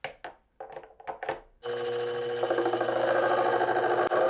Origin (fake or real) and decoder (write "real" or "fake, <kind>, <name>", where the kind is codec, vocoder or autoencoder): real